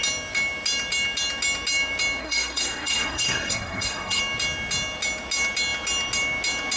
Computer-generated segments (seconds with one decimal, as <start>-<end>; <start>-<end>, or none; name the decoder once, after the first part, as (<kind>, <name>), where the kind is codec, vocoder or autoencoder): 2.2-4.2 (codec, SNAC)